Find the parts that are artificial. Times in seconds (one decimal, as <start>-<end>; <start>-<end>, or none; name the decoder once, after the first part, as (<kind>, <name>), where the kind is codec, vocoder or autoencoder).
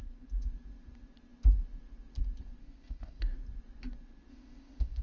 2.6-3.2 (codec, ZipCodec); 4.3-5.0